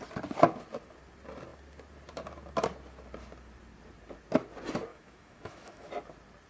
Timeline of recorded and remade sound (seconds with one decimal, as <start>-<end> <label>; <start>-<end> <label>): 0.0-4.9 recorded; 4.9-5.9 remade; 5.9-6.5 recorded